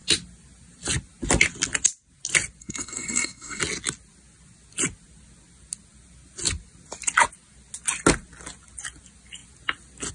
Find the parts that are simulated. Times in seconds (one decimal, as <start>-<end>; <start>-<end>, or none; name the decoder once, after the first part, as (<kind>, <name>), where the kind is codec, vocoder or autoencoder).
2.6-3.6 (codec, SNAC)